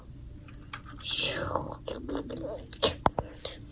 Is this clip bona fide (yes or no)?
yes